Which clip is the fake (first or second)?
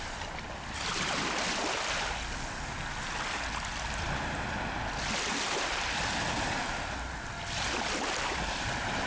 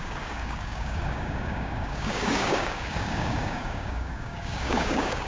second